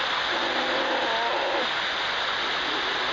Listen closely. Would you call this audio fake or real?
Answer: real